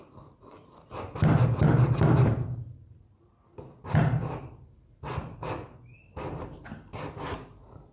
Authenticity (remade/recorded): remade